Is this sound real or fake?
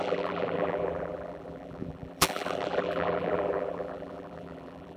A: fake